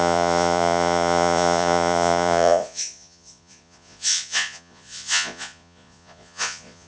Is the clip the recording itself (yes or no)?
no